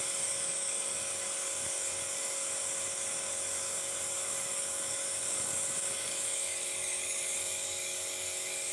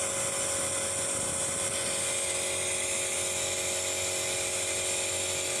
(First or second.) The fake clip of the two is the first